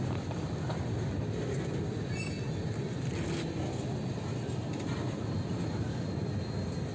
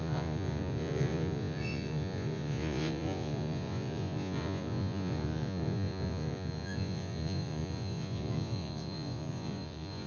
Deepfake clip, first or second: second